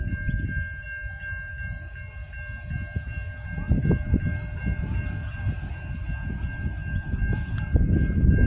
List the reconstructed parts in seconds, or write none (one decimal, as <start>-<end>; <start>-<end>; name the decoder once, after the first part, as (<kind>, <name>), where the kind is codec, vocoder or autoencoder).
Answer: none